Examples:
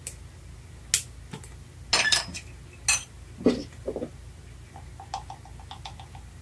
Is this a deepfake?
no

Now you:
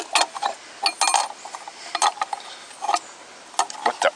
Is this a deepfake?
no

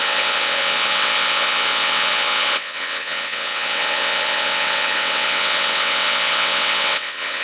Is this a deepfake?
yes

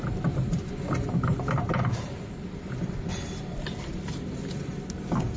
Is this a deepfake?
no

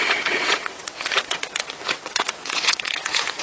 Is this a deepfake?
yes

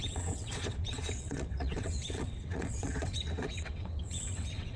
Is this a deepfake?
yes